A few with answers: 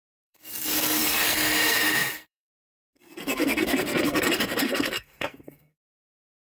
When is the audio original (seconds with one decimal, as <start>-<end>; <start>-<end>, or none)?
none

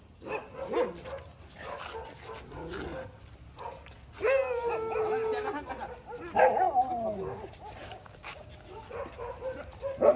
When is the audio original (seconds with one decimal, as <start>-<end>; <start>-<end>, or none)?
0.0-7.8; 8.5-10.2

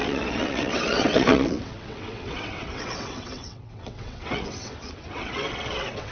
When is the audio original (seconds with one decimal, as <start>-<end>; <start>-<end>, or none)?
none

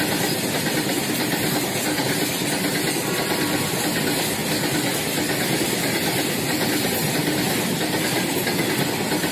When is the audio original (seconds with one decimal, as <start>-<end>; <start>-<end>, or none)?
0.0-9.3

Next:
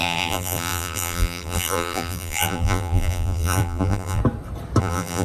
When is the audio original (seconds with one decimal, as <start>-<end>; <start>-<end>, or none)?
4.2-4.8

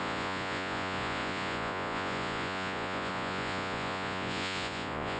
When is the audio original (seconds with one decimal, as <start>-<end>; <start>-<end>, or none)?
none